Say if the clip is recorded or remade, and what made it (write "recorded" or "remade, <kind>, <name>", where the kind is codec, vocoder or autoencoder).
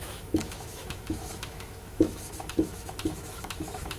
remade, autoencoder, DAC-VAE